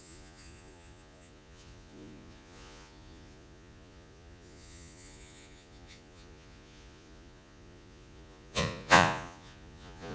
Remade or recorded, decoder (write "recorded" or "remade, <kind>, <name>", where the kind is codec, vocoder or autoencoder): remade, vocoder, Vocos